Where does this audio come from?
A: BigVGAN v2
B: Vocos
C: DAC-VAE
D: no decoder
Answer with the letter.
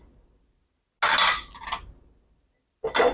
D